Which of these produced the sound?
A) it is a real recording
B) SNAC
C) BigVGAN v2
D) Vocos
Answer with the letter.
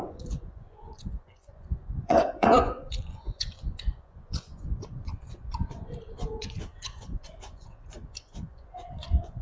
D